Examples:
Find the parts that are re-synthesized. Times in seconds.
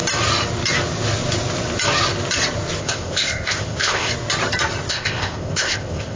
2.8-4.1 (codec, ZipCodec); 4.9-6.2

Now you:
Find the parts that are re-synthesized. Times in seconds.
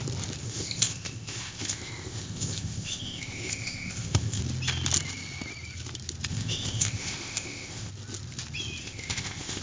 0.4-4.4 (codec, ZipCodec); 6.3-7.9; 8.8-9.6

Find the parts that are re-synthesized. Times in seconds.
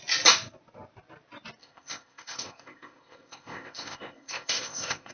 1.6-5.1 (codec, ZipCodec)